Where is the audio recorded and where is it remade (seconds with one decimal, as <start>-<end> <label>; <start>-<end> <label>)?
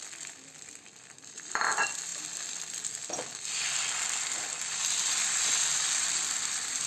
0.0-6.9 remade